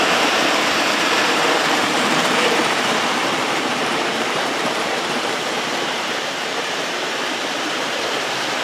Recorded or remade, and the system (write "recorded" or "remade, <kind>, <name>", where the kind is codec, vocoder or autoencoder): remade, vocoder, BigVGAN v2